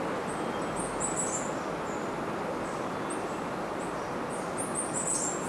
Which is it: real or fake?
real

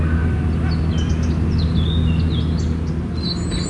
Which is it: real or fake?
real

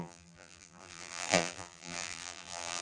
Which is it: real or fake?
fake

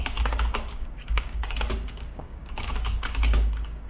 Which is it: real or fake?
fake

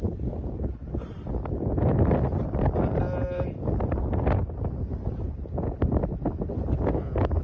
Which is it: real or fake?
real